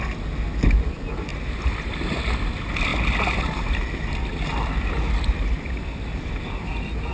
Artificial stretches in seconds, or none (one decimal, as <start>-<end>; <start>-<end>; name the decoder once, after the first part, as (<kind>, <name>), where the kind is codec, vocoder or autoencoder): none